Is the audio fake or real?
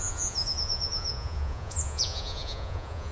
fake